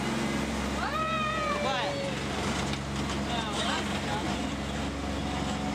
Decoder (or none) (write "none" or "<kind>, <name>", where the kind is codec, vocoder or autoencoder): none